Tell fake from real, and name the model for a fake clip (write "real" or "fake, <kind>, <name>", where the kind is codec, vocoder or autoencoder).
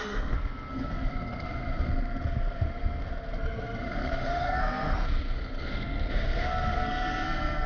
fake, codec, SNAC